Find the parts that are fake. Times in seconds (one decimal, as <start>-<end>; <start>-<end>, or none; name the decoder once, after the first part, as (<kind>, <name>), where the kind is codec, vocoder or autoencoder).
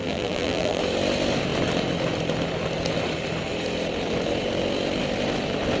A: 0.0-0.8 (vocoder, BigVGAN v2)